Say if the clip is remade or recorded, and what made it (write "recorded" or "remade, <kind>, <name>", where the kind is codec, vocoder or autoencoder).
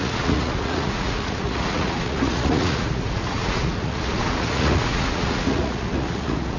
remade, vocoder, Vocos